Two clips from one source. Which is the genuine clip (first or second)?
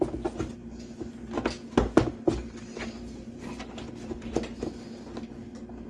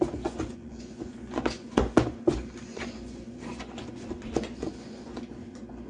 first